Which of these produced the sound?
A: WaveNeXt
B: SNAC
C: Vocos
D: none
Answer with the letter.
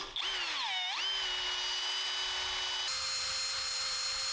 D